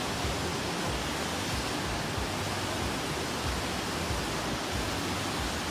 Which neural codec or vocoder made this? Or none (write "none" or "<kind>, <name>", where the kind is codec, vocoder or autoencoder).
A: none